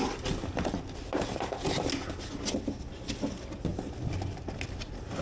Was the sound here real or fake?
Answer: real